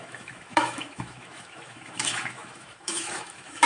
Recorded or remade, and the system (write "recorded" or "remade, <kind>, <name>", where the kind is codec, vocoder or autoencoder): remade, autoencoder, DAC-VAE